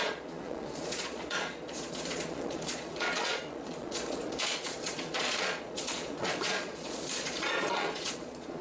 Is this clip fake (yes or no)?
yes